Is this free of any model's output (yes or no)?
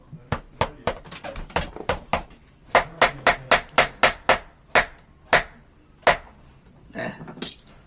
yes